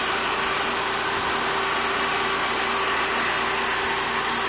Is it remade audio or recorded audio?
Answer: recorded